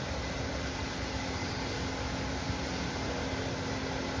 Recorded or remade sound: recorded